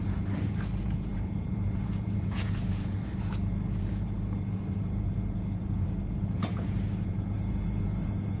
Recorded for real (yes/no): no